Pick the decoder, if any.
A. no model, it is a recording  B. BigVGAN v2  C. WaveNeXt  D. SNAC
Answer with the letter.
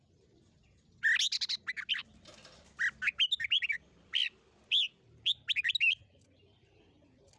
A